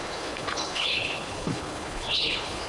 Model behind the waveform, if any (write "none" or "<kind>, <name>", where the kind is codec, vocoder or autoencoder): codec, HILCodec